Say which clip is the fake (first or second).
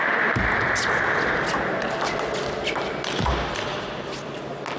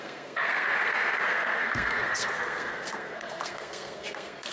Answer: second